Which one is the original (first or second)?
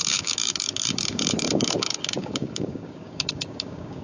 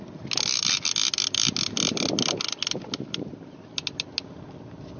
second